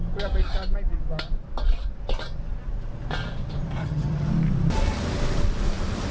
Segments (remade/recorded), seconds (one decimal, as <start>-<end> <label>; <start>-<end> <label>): 0.0-3.8 recorded; 3.8-4.3 remade; 4.3-6.1 recorded